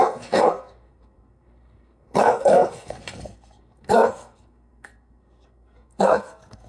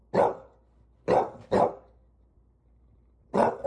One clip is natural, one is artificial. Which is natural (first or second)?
second